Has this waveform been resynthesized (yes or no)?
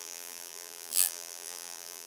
yes